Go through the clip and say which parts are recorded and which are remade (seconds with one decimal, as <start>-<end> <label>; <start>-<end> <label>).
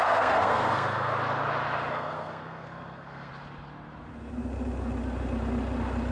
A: 0.0-1.1 remade; 1.1-1.9 recorded; 1.9-3.3 remade; 3.3-6.1 recorded